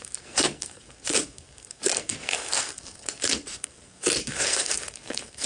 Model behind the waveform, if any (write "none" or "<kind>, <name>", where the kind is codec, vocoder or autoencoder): codec, SNAC